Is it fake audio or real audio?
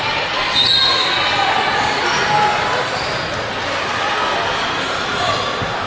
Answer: real